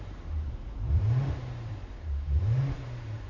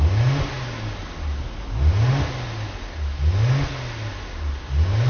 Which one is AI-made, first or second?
first